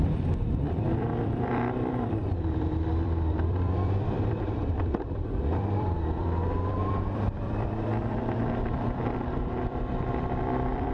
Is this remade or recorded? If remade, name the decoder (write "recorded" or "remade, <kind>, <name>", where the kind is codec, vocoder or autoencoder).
remade, vocoder, BigVGAN v2